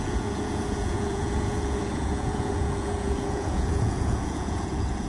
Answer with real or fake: fake